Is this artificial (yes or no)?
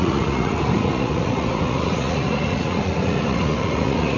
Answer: yes